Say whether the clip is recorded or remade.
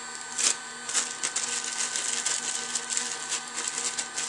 recorded